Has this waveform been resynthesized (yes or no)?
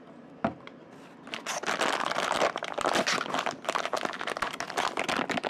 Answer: no